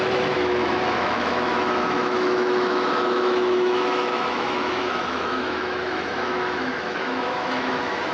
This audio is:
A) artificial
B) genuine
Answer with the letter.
A